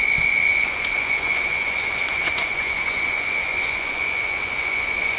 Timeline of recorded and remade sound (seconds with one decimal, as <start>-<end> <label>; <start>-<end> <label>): 0.0-5.2 remade